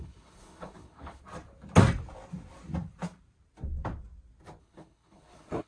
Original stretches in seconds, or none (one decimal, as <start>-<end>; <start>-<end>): 1.2-4.6